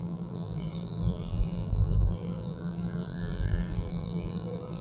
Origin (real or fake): fake